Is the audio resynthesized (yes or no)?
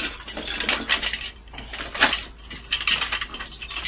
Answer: no